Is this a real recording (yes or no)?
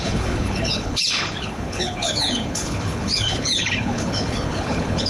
no